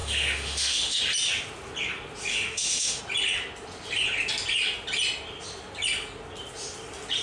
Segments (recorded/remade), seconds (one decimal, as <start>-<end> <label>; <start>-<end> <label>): 0.0-1.0 remade; 1.0-2.3 recorded; 2.3-3.0 remade; 3.0-7.2 recorded